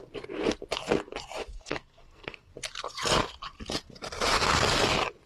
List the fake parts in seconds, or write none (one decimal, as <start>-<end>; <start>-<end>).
1.5-2.5